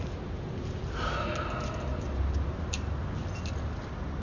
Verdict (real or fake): real